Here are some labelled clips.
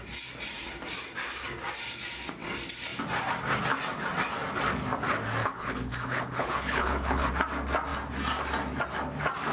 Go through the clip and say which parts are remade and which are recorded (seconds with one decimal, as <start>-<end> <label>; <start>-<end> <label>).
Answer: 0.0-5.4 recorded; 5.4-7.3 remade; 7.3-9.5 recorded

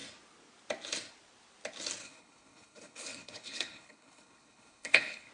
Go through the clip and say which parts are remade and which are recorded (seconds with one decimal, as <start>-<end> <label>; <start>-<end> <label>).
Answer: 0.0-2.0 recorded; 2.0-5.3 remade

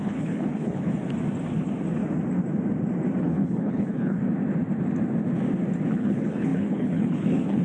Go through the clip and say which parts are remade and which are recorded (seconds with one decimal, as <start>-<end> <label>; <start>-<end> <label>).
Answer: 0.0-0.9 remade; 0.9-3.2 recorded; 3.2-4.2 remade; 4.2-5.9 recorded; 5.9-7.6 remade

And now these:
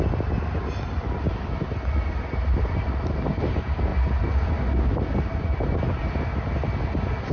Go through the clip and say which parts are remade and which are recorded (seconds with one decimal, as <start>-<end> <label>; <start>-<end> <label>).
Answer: 0.0-7.3 recorded